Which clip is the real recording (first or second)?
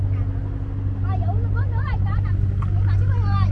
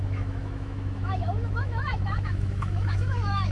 first